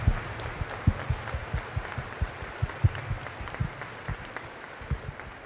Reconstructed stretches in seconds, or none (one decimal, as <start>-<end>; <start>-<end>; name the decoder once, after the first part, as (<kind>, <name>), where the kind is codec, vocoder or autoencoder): 1.4-4.7 (vocoder, BigVGAN v2)